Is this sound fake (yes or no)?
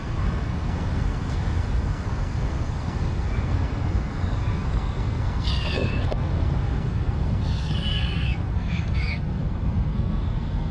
yes